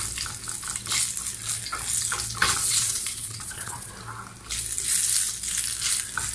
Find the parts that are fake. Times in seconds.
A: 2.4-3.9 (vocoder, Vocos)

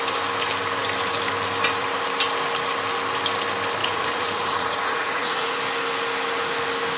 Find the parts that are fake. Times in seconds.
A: 3.8-5.6 (vocoder, Vocos)

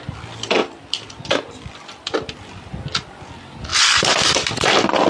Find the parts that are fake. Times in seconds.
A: none

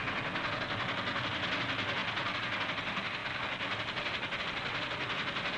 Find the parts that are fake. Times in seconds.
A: none

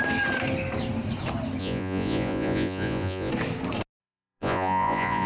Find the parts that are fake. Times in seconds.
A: 1.6-3.3 (vocoder, Vocos); 4.0-5.3